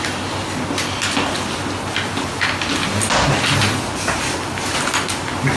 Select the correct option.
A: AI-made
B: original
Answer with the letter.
B